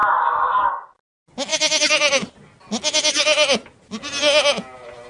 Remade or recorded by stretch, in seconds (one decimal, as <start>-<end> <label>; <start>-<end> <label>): 0.0-5.1 recorded